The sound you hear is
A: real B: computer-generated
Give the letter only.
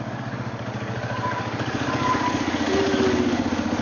B